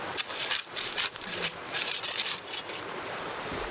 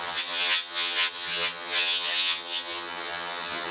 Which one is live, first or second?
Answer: first